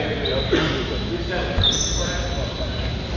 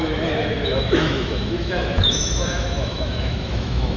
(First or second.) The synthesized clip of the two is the second